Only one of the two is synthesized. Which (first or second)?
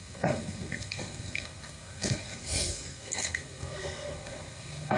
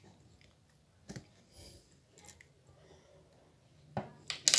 first